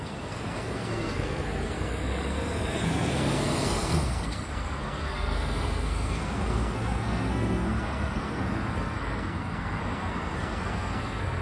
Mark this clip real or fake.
fake